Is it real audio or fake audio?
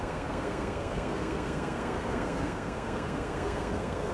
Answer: fake